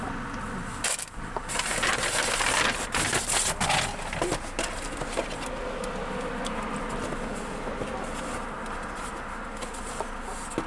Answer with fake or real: real